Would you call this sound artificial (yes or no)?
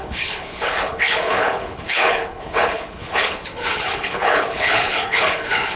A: yes